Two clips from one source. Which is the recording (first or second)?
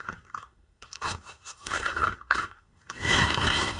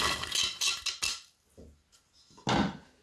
second